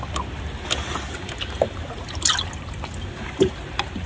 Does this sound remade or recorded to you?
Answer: recorded